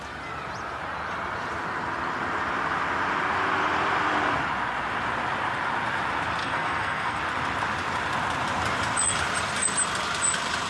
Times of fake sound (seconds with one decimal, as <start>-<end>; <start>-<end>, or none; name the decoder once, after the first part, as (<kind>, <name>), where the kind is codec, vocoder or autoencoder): 6.4-7.2 (codec, SNAC)